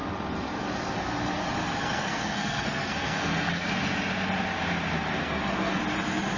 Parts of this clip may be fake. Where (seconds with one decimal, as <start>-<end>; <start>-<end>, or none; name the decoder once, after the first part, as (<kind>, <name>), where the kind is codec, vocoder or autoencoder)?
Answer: 1.6-3.7 (codec, SNAC); 5.2-5.8